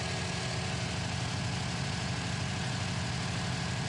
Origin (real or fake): real